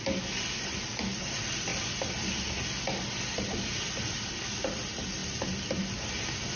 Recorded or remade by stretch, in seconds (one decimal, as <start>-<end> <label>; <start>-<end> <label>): 0.0-6.6 recorded